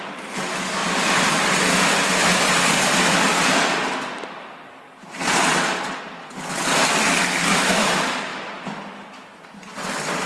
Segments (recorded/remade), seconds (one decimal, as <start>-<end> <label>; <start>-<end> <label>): 0.0-10.3 remade